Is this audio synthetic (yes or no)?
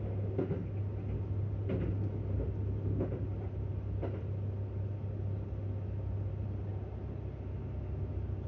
no